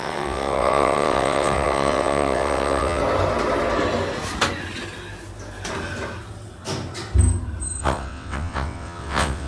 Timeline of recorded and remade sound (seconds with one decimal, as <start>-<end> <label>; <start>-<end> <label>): 0.0-3.0 remade; 3.0-7.8 recorded; 7.8-9.5 remade